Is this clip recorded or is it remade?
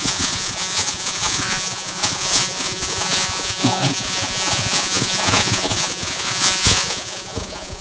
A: remade